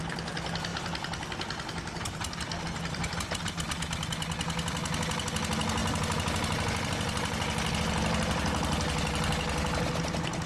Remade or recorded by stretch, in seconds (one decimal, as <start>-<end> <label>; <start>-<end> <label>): 0.0-10.5 recorded